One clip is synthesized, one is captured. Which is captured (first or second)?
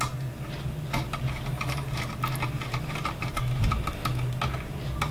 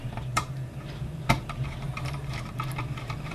first